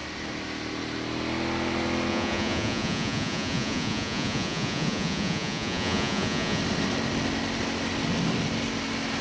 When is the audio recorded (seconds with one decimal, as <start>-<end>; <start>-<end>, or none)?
0.0-2.1; 6.6-9.2

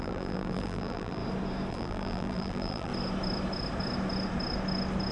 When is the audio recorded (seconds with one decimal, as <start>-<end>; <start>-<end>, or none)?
1.2-1.7; 2.9-5.1

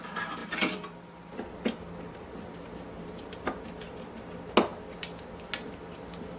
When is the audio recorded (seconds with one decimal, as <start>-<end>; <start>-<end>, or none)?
0.0-6.4

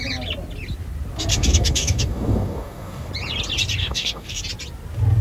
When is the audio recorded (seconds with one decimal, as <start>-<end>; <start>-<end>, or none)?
0.0-1.3; 3.1-3.8; 4.4-5.2